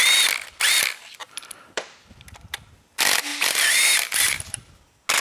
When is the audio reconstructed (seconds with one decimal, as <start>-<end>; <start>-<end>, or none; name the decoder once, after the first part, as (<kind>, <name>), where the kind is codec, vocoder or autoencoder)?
1.2-1.8 (vocoder, BigVGAN v2); 3.3-4.8